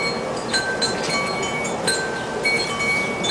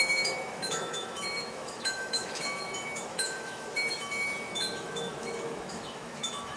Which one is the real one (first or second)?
first